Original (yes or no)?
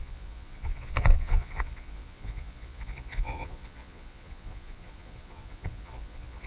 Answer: no